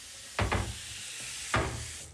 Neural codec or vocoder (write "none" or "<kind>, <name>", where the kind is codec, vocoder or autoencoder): none